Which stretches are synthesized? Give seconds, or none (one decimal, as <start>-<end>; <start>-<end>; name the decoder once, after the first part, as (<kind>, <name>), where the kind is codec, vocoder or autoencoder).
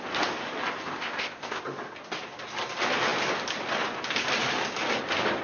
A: 0.9-1.6 (codec, ZipCodec)